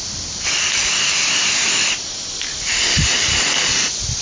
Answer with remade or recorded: recorded